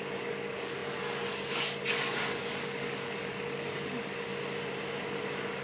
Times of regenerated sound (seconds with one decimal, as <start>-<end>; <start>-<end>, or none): 0.0-4.3